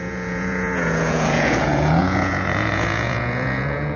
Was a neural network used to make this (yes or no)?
yes